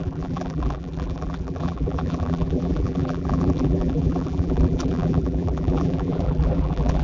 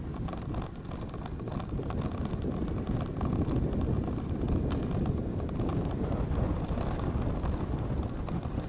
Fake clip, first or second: first